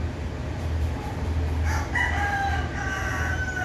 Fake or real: real